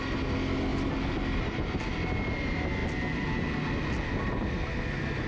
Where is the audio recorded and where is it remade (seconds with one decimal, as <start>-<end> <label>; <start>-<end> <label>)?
0.0-0.7 recorded; 0.7-1.4 remade; 1.4-5.3 recorded